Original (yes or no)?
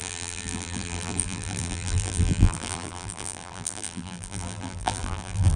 no